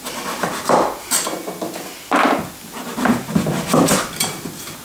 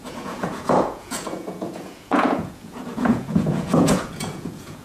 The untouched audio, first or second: first